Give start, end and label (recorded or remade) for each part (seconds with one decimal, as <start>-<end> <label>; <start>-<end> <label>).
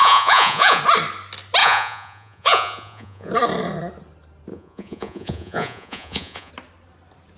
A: 0.0-0.8 remade; 0.8-1.6 recorded; 1.6-3.3 remade; 3.3-4.5 recorded; 4.5-6.5 remade; 6.5-7.4 recorded